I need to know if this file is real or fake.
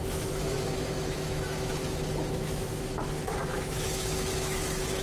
fake